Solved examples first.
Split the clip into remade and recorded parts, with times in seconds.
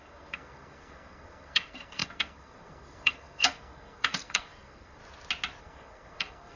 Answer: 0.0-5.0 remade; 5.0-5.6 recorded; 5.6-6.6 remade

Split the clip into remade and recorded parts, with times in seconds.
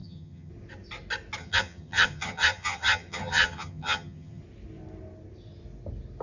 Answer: 0.0-0.5 remade; 0.5-1.4 recorded; 1.4-4.4 remade; 4.4-6.2 recorded